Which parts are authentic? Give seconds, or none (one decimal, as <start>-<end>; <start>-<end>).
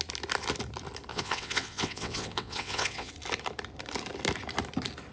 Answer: 0.0-1.1; 3.1-5.1